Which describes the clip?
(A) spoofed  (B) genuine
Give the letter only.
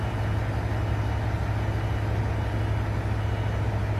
B